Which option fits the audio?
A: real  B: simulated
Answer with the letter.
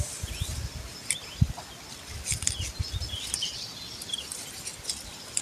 A